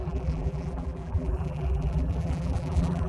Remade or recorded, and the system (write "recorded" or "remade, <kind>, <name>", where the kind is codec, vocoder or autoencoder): remade, vocoder, BigVGAN v2